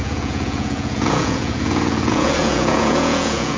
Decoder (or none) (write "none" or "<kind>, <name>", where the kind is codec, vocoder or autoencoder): vocoder, Vocos